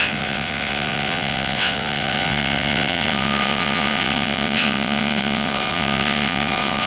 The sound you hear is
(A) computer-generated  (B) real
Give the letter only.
A